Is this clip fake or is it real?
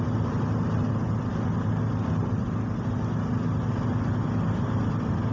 real